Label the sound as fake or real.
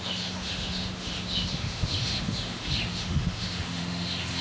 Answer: fake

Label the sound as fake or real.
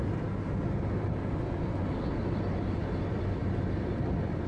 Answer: fake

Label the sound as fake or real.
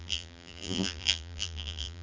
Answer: fake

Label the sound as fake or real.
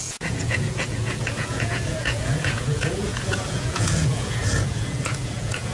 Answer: fake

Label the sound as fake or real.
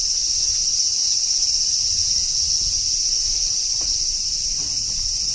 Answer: real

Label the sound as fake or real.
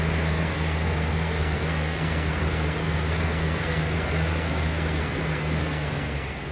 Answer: fake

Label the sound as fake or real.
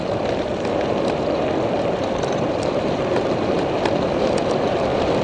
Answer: fake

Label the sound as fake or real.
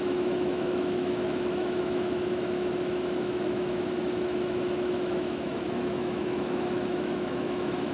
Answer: fake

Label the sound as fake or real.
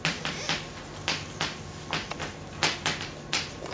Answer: real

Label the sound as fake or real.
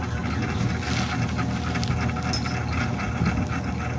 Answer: real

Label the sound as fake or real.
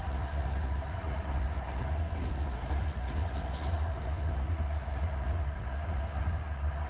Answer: fake